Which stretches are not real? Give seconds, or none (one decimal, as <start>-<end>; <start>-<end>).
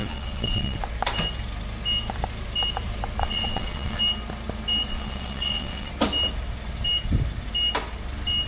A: 0.0-0.8; 3.2-4.0; 4.9-5.9